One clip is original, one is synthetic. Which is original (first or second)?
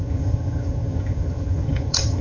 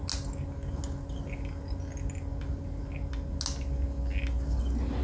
second